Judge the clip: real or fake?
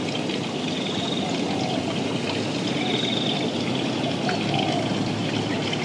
real